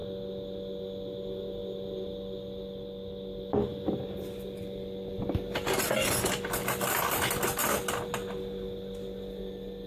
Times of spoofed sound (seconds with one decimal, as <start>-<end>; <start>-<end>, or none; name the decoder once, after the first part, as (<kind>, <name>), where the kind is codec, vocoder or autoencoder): 3.7-7.4 (vocoder, BigVGAN v2)

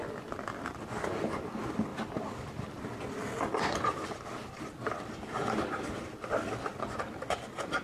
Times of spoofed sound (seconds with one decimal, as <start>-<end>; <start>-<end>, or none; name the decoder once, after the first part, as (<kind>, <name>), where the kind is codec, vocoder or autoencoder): none

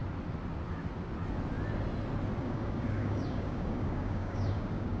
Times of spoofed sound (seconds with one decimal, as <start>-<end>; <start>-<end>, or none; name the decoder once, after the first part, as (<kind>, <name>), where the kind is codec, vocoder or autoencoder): 2.4-5.0 (codec, DAC)

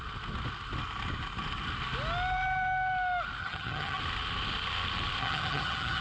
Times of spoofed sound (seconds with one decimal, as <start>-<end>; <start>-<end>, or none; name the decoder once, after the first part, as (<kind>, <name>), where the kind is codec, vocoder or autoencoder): 3.4-4.0 (vocoder, HiFi-GAN); 5.2-6.0

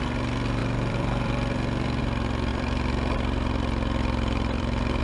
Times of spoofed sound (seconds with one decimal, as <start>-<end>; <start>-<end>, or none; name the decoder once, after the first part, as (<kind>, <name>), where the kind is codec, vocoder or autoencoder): 0.6-2.0 (vocoder, BigVGAN v2); 2.5-5.0

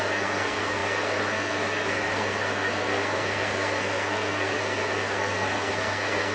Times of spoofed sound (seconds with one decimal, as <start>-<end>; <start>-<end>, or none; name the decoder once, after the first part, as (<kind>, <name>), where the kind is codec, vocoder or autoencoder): 0.0-6.3 (codec, SNAC)

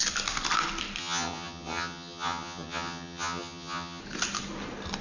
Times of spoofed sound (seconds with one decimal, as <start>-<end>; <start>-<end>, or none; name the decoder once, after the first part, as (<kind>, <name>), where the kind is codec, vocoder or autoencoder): 1.0-4.0 (vocoder, HiFi-GAN)

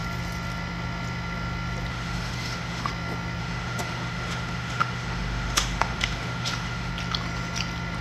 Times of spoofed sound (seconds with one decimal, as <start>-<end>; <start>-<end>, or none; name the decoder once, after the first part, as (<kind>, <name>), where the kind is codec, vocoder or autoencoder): 1.9-2.9 (autoencoder, DAC-VAE); 3.4-6.9